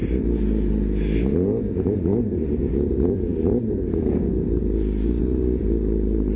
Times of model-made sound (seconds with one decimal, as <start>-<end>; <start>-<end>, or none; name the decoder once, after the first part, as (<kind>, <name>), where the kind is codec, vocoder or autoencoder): none